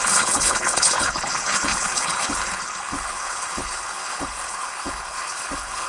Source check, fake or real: fake